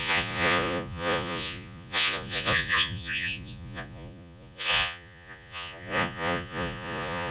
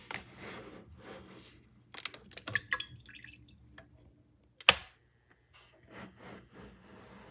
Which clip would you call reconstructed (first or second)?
first